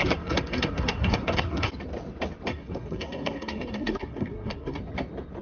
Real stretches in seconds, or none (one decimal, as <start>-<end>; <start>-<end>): 1.7-2.5; 4.8-5.4